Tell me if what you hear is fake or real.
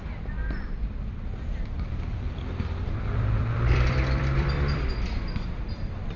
fake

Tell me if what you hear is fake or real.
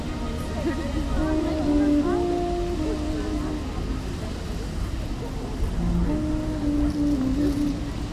real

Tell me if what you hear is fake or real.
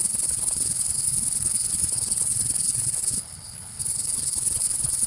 fake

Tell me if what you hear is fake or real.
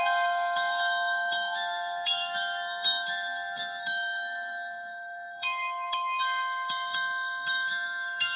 fake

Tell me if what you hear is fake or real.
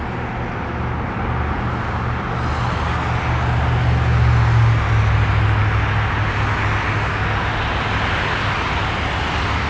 real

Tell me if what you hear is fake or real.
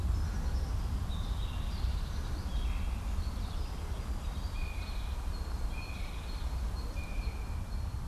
real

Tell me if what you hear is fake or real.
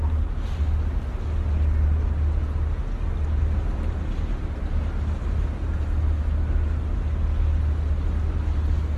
real